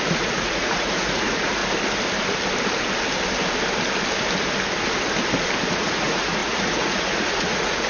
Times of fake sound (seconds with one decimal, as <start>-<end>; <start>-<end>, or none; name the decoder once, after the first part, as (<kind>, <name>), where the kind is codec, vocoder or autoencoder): 0.0-1.6 (vocoder, Vocos); 5.7-7.9